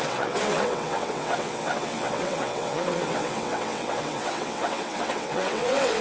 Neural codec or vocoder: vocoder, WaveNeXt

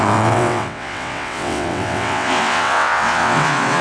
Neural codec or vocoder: vocoder, WaveNeXt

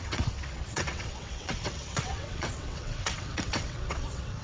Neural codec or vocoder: vocoder, WaveNeXt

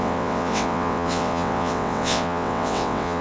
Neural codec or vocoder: vocoder, WaveNeXt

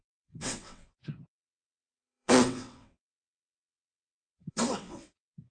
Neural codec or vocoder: vocoder, WaveNeXt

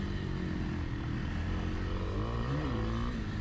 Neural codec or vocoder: none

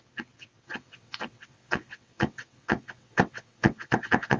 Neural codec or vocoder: vocoder, WaveNeXt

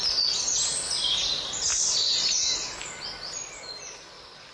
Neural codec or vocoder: none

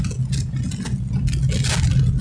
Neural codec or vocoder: none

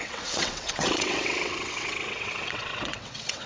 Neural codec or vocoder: vocoder, WaveNeXt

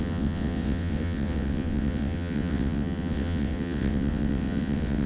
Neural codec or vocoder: vocoder, WaveNeXt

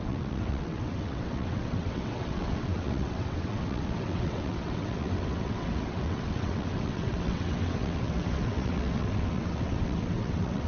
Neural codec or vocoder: vocoder, WaveNeXt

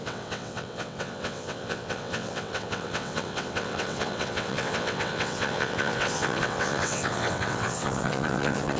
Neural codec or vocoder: vocoder, WaveNeXt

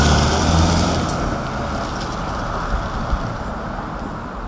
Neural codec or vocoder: none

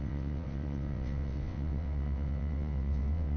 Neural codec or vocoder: vocoder, WaveNeXt